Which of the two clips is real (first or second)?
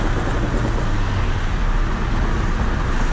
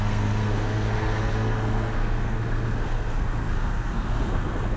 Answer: first